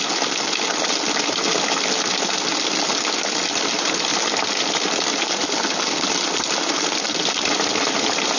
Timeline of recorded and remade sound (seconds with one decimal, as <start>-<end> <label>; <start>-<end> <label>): 0.0-8.4 recorded